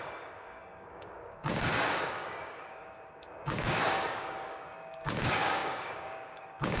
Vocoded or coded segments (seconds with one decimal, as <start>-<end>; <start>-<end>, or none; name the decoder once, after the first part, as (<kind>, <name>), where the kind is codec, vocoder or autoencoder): 0.0-6.8 (codec, DAC)